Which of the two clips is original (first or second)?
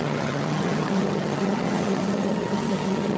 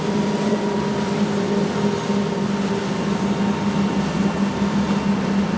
second